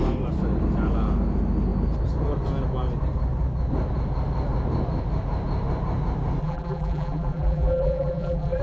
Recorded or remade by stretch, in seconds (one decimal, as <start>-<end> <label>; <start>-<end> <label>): 0.0-6.4 recorded; 6.4-8.6 remade

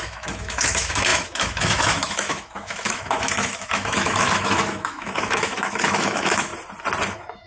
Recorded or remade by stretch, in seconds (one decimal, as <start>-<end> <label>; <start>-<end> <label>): 0.0-6.5 remade; 6.5-7.1 recorded; 7.1-7.5 remade

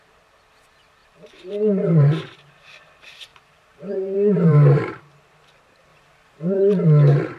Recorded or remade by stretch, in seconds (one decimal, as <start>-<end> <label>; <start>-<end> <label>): 0.0-1.0 recorded; 1.0-2.2 remade; 2.2-3.3 recorded; 3.3-5.0 remade; 5.0-5.9 recorded; 5.9-6.6 remade; 6.6-7.4 recorded

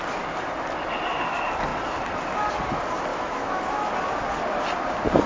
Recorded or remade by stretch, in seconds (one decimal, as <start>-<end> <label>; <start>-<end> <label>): 0.0-3.1 recorded; 3.1-3.9 remade; 3.9-5.3 recorded

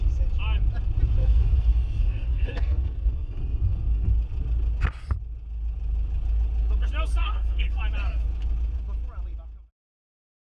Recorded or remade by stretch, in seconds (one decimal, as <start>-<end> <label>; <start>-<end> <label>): 0.0-1.2 recorded; 1.2-4.1 remade; 4.1-7.2 recorded; 7.2-7.8 remade; 7.8-10.6 recorded

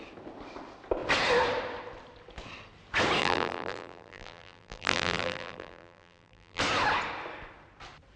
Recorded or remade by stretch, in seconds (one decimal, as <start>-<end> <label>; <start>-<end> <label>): 0.0-3.2 recorded; 3.2-6.6 remade; 6.6-8.2 recorded

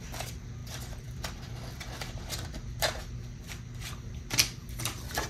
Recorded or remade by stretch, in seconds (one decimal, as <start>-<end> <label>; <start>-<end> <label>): 0.0-0.6 recorded; 0.6-2.2 remade; 2.2-5.3 recorded

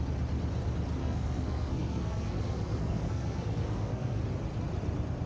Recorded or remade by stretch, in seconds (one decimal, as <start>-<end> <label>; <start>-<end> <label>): 0.0-1.0 recorded; 1.0-4.2 remade; 4.2-5.3 recorded